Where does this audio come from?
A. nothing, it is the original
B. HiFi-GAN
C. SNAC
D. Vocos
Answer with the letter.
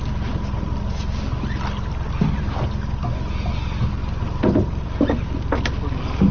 A